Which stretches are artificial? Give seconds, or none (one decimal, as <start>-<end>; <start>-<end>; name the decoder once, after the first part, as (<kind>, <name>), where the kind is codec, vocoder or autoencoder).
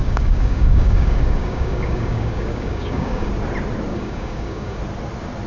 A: 0.0-3.3 (codec, DAC); 3.9-4.8